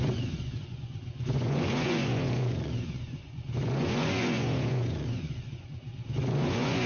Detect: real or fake fake